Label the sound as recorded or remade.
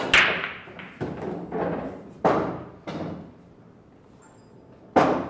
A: recorded